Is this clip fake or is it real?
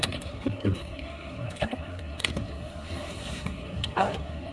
fake